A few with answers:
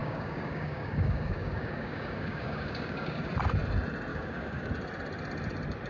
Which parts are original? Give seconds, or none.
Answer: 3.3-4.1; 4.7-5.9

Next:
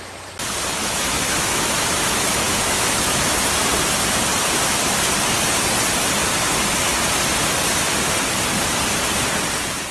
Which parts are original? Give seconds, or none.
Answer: 0.0-0.8; 3.7-9.9